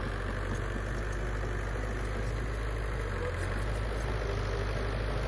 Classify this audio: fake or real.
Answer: real